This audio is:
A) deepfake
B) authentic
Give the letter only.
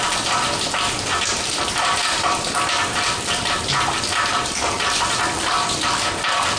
A